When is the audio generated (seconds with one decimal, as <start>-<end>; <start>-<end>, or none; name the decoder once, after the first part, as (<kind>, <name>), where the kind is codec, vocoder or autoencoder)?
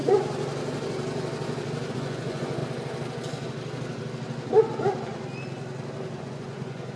1.9-2.6 (vocoder, Vocos); 6.2-7.0